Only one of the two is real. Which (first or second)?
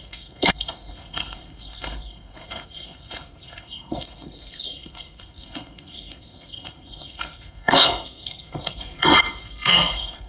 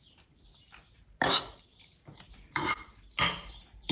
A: second